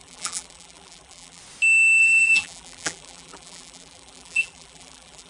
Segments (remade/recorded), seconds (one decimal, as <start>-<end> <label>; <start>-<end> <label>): 0.0-1.4 remade; 1.4-2.0 recorded; 2.0-5.3 remade

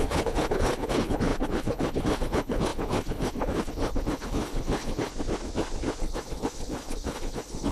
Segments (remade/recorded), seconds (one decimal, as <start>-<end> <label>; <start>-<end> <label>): 0.0-5.1 remade; 5.1-6.0 recorded; 6.0-7.7 remade